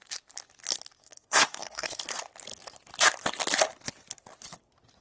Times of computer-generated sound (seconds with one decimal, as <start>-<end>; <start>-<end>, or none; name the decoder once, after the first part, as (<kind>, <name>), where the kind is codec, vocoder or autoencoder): 1.0-2.0 (codec, SNAC)

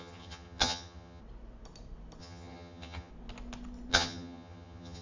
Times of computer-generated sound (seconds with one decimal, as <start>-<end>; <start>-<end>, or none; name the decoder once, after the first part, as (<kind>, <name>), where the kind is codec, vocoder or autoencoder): 0.0-1.2 (vocoder, HiFi-GAN); 2.2-3.1; 3.9-5.0

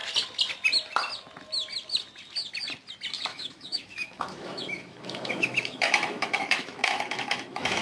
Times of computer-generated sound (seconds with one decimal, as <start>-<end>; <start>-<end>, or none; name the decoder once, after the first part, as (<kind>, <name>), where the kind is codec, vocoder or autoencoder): 3.3-7.8 (autoencoder, DAC-VAE)

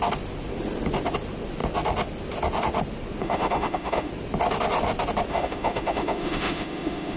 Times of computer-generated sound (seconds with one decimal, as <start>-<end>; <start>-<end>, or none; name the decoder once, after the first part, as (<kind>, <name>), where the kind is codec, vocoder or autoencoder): 3.2-4.1 (autoencoder, DAC-VAE); 5.3-7.2

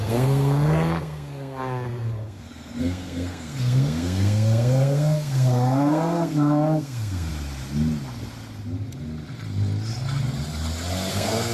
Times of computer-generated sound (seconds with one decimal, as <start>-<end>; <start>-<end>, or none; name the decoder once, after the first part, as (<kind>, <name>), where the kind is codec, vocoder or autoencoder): 0.0-7.3 (codec, SNAC); 11.1-11.5

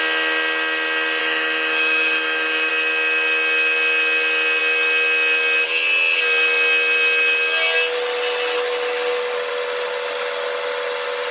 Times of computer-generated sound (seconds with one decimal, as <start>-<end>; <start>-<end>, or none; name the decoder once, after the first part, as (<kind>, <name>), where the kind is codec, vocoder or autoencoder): 1.2-2.7 (autoencoder, DAC-VAE)

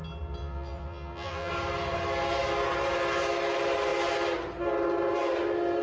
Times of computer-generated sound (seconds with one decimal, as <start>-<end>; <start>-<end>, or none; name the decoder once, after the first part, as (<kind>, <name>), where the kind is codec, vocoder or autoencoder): 0.4-1.5 (vocoder, BigVGAN v2)